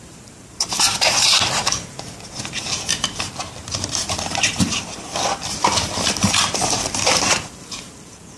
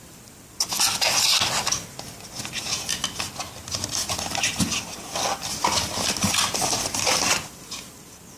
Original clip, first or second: second